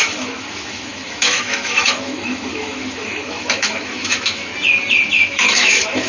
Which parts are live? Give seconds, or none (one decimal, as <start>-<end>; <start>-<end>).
4.5-5.1

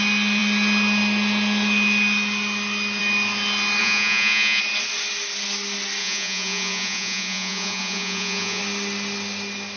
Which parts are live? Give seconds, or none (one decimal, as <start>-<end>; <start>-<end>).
0.0-3.8; 4.6-6.0; 8.6-9.8